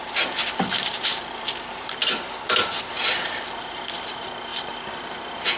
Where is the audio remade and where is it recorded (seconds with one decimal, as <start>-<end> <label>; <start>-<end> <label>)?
0.0-4.5 remade; 4.5-5.1 recorded; 5.1-5.6 remade